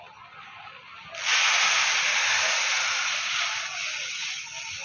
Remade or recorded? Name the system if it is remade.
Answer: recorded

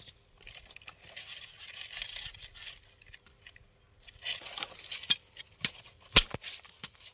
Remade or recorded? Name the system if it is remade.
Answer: recorded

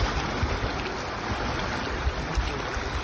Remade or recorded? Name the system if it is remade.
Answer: recorded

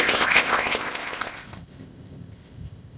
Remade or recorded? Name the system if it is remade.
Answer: remade, codec, ZipCodec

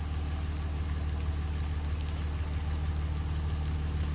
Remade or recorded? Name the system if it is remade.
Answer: recorded